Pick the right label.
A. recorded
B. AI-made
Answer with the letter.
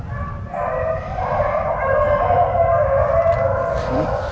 A